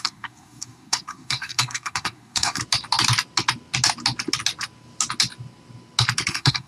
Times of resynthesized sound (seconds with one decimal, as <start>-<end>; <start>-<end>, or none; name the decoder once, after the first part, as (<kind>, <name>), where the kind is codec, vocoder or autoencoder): 0.0-2.6 (codec, SNAC); 6.3-6.7